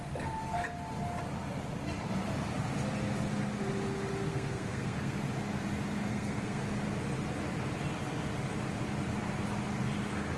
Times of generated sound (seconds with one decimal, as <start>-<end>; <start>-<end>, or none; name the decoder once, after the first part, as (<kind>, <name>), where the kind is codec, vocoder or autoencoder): 4.3-5.2 (codec, SNAC); 6.1-6.6